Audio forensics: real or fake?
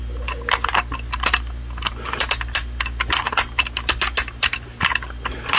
real